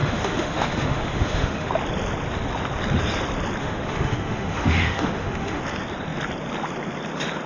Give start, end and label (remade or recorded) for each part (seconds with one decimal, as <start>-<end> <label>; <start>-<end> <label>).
0.0-1.7 remade; 1.7-3.6 recorded; 3.6-5.6 remade; 5.6-7.5 recorded